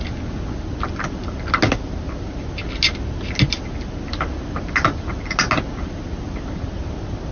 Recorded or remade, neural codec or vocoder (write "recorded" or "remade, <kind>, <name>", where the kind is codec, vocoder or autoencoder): recorded